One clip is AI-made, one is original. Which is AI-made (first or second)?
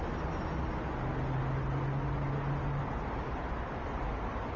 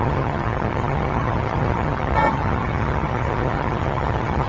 second